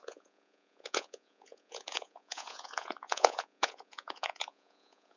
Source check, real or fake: fake